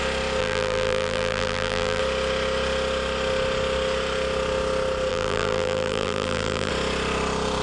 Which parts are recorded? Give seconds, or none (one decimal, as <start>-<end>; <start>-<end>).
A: 0.0-0.4; 2.0-5.1; 6.7-7.6